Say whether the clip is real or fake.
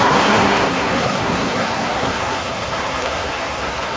fake